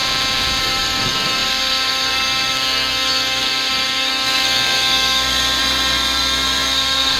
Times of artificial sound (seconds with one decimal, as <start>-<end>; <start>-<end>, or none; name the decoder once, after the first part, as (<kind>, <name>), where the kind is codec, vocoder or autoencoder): 0.6-7.2 (codec, SNAC)